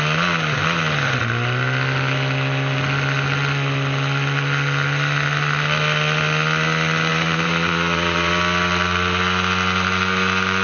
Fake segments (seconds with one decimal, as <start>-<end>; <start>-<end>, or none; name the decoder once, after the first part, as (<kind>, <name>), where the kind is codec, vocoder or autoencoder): 7.1-8.3 (vocoder, BigVGAN v2)